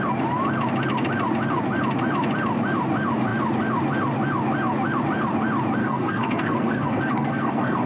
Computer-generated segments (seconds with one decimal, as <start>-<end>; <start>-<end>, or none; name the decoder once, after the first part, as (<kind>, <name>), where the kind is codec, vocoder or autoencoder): 5.8-7.9 (codec, SNAC)